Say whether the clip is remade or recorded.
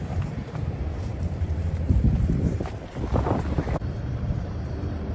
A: remade